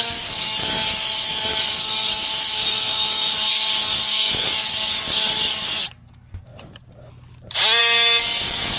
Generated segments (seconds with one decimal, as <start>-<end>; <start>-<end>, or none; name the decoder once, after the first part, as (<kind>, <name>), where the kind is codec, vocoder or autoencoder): 0.0-6.5 (codec, DAC); 7.8-8.8